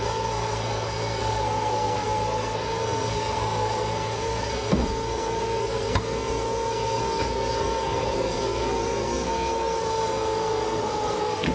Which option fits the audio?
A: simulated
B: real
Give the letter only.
A